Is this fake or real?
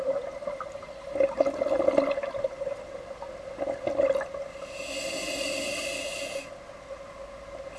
real